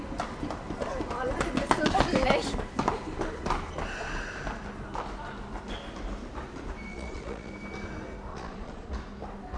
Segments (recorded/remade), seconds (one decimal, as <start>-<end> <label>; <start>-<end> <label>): 0.0-6.9 recorded; 6.9-7.5 remade; 7.5-8.3 recorded; 8.3-8.9 remade; 8.9-9.6 recorded